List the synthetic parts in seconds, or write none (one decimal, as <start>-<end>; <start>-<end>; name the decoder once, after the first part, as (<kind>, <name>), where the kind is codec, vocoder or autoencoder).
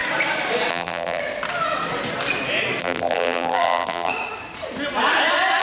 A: 0.7-1.2 (vocoder, BigVGAN v2); 2.8-4.1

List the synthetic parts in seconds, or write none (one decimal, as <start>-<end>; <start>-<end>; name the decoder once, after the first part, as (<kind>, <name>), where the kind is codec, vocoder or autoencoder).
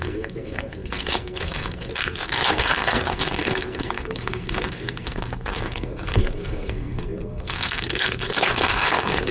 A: 0.0-9.3 (codec, SNAC)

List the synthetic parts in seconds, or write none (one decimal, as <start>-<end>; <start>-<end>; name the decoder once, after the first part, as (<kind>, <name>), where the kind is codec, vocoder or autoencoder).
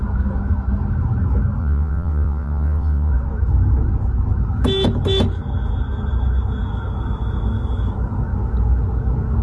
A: 1.6-3.1 (vocoder, WaveNeXt)